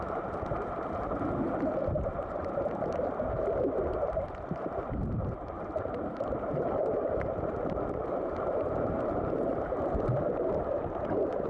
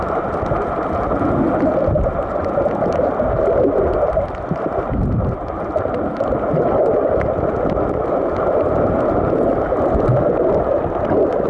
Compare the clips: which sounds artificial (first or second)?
first